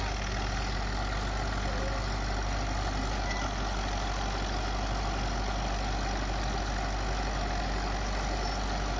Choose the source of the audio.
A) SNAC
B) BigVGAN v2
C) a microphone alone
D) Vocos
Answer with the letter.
C